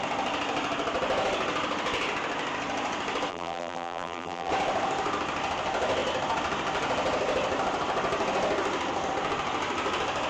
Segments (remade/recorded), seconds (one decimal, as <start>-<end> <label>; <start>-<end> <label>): 0.0-3.3 recorded; 3.3-4.5 remade; 4.5-10.3 recorded